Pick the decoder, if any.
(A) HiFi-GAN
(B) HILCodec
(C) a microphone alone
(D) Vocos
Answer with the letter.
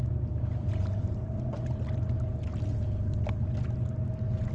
C